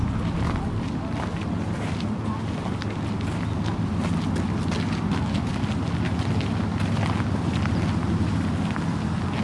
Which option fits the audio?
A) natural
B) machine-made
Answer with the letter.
A